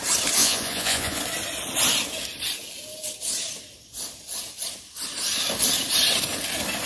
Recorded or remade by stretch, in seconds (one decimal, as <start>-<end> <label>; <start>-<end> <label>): 0.0-0.4 recorded; 0.4-1.2 remade; 1.2-6.9 recorded